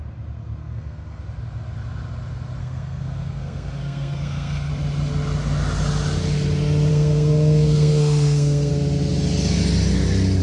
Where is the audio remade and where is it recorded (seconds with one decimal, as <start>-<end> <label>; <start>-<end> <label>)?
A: 0.0-0.6 recorded; 0.6-1.2 remade; 1.2-2.6 recorded; 2.6-4.7 remade; 4.7-6.9 recorded; 6.9-8.7 remade; 8.7-10.4 recorded